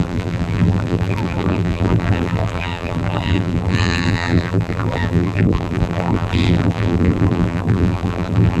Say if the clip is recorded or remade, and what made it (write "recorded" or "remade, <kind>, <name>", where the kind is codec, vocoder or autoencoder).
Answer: remade, vocoder, BigVGAN v2